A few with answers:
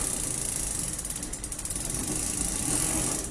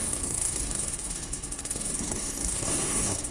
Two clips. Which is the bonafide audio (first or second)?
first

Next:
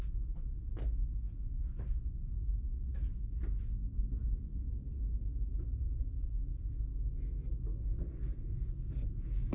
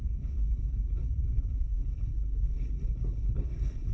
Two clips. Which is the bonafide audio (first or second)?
first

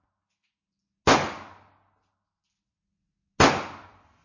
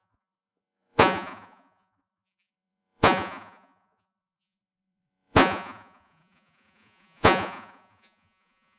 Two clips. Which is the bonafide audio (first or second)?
first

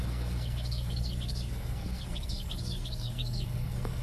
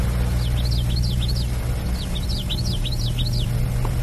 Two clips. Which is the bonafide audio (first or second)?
second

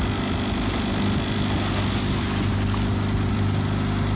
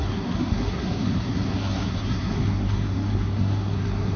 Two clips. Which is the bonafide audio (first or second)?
first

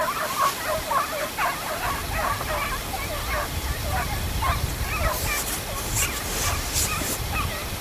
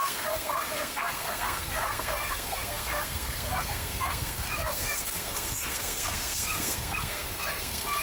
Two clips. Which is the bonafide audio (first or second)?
first